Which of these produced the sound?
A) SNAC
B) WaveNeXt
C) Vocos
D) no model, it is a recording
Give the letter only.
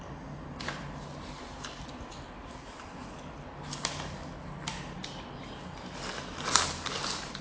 D